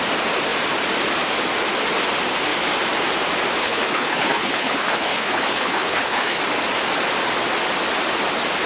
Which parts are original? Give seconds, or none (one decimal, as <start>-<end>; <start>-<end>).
0.0-3.6; 6.4-8.7